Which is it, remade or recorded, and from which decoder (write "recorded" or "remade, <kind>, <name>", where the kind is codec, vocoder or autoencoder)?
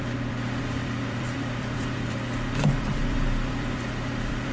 remade, vocoder, BigVGAN v2